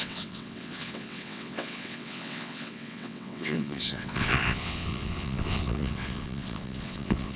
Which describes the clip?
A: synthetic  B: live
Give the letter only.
A